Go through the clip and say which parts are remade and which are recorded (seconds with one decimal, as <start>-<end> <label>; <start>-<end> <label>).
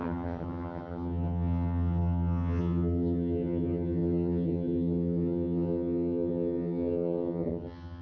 0.0-8.0 remade